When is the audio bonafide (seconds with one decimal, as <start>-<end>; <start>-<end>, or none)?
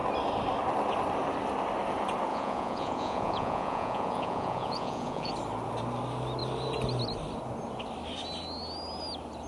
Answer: 0.0-2.3; 5.3-9.5